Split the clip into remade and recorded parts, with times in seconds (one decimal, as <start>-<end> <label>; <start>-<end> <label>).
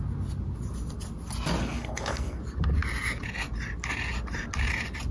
0.0-1.6 recorded; 1.6-2.4 remade; 2.4-5.1 recorded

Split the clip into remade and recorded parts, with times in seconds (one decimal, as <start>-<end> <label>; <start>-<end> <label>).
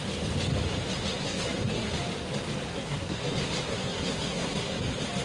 0.0-1.2 recorded; 1.2-1.9 remade; 1.9-2.7 recorded; 2.7-3.3 remade; 3.3-3.7 recorded; 3.7-4.8 remade; 4.8-5.2 recorded